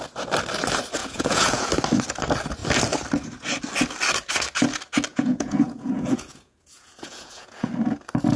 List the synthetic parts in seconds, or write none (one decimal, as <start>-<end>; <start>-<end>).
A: 1.0-1.7; 5.1-7.7